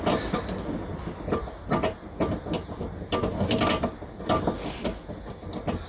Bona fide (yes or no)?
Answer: yes